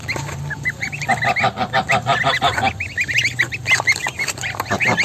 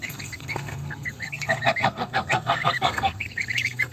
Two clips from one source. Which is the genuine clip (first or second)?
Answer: first